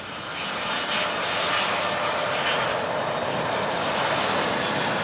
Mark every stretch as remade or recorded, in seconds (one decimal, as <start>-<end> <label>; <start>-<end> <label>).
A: 0.0-5.0 recorded